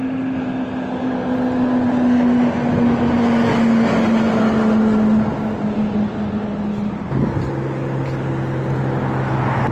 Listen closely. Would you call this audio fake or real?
real